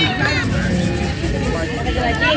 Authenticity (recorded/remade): recorded